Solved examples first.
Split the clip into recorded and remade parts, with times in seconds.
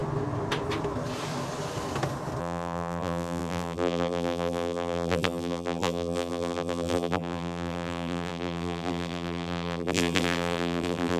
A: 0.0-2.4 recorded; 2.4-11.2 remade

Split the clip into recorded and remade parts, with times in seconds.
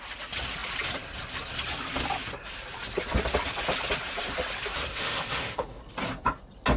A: 0.0-4.9 recorded; 4.9-5.8 remade; 5.8-6.8 recorded